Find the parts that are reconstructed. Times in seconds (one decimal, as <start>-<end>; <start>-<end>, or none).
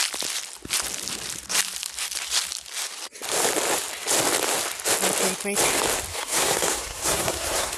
6.1-7.8